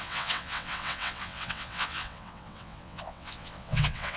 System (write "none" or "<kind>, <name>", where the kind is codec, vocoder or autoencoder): vocoder, WaveNeXt